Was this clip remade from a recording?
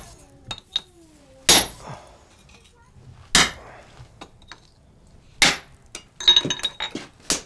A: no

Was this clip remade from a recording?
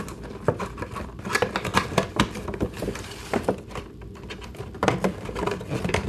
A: yes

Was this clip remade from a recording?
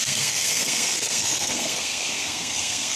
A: yes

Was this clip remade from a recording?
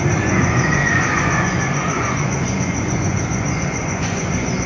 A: yes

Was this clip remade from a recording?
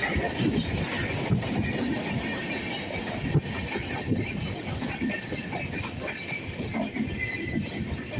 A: no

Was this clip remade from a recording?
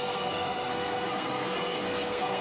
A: yes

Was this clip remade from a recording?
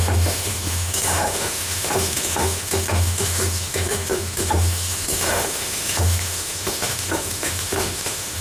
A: yes